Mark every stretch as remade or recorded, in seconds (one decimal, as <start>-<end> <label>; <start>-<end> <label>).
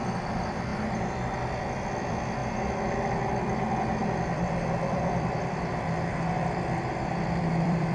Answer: 0.0-0.7 remade; 0.7-1.6 recorded; 1.6-2.4 remade; 2.4-3.1 recorded; 3.1-7.9 remade